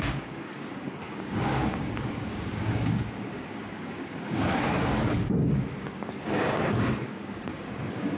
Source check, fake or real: fake